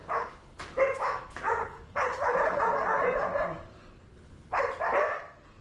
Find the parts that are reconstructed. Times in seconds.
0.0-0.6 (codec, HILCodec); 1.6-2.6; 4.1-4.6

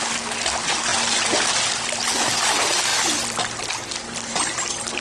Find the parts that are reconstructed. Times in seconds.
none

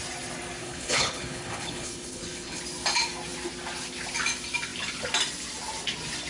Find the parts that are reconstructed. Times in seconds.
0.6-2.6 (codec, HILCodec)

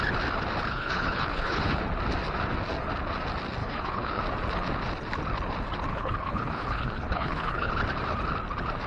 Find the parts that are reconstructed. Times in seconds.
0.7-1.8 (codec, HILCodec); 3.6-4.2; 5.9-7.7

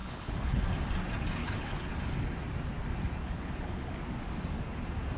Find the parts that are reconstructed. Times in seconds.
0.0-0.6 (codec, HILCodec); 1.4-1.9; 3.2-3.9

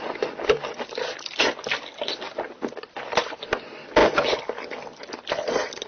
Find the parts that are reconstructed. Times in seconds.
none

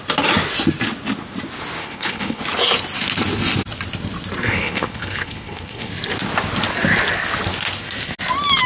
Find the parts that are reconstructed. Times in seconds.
1.8-2.4 (codec, HILCodec); 4.4-5.9